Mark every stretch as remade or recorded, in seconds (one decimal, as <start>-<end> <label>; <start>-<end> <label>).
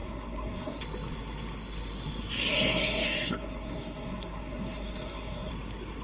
0.0-0.8 remade; 0.8-2.5 recorded; 2.5-5.5 remade; 5.5-6.0 recorded